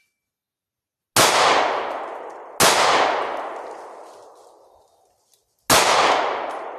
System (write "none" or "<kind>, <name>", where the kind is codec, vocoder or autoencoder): none